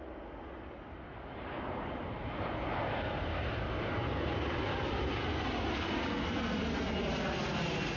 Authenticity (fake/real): real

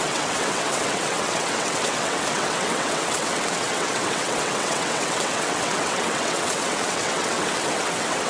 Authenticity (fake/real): fake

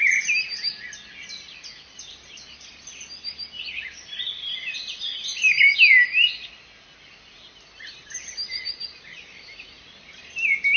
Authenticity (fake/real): real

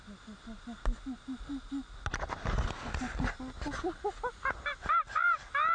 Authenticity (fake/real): real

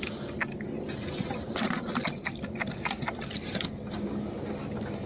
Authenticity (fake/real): real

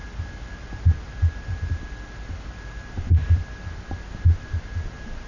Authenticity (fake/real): real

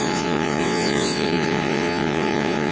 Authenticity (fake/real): fake